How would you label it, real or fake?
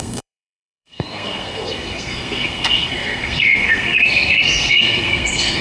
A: fake